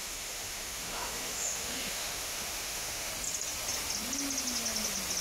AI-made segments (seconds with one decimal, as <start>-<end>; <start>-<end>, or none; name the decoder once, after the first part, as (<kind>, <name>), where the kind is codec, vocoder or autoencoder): 0.0-3.1 (autoencoder, DAC-VAE)